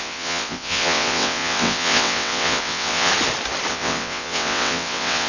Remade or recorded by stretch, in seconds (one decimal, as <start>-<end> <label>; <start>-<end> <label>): 0.0-3.1 remade; 3.1-3.7 recorded; 3.7-5.3 remade